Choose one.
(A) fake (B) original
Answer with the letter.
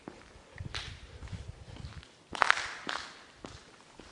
B